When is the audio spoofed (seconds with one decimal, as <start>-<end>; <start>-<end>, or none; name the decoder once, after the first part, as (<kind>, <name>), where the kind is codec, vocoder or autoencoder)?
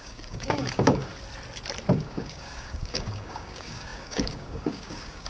0.0-1.1 (codec, DAC); 1.9-5.3